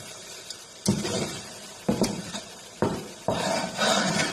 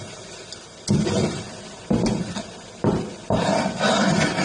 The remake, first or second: first